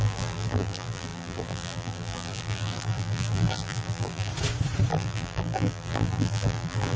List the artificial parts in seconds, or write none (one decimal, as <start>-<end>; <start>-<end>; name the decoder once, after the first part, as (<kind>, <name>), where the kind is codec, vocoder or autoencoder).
0.0-4.3 (vocoder, BigVGAN v2); 4.9-7.0